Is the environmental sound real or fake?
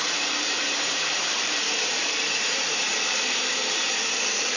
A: fake